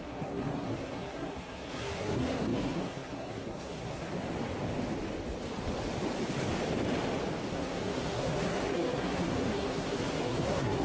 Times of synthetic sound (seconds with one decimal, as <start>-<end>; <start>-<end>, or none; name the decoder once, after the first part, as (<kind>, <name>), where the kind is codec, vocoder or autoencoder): 0.0-4.1 (codec, SNAC); 7.5-10.8